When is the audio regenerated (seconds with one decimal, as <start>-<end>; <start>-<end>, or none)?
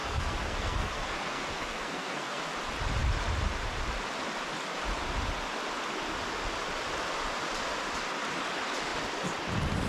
0.0-2.4